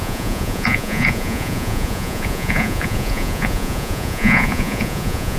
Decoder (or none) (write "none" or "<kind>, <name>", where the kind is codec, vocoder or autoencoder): vocoder, Vocos